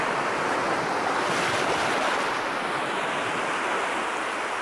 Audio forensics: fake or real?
real